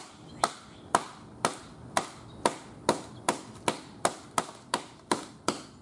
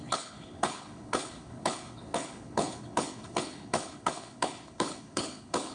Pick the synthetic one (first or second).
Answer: second